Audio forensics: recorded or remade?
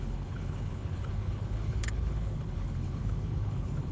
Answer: remade